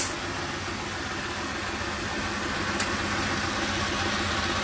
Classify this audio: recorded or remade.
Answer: recorded